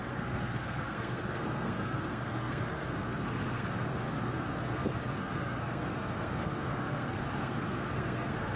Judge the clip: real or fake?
fake